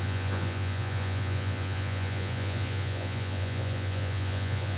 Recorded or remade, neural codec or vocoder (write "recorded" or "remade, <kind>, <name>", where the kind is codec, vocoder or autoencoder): remade, vocoder, Vocos